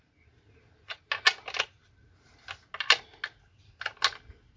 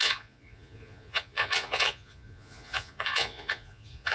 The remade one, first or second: second